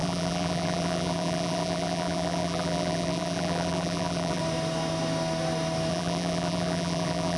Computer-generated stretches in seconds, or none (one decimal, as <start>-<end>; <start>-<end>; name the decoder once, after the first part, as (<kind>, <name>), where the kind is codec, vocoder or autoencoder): 0.0-4.4 (vocoder, BigVGAN v2); 5.9-7.4